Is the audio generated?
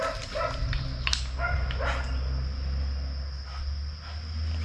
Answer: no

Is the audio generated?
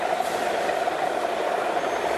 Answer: no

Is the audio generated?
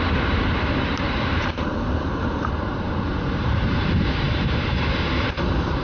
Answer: yes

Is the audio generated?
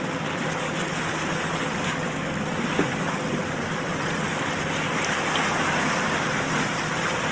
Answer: no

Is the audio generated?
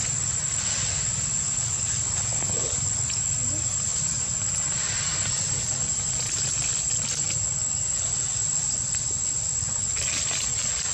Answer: no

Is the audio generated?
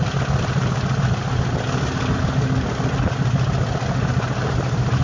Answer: no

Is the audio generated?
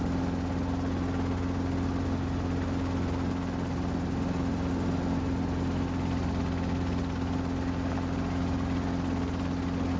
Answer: no